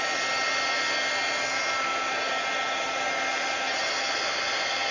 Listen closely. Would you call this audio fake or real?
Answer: real